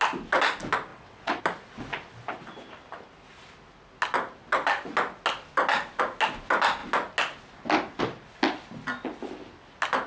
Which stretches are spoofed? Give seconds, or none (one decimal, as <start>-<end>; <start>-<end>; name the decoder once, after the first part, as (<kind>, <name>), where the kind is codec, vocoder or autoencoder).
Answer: 0.9-1.4 (vocoder, WaveNeXt)